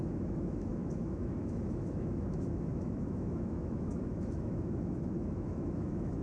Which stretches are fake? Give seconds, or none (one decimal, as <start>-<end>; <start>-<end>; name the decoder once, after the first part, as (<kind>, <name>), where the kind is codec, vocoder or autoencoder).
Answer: 0.0-6.2 (autoencoder, DAC-VAE)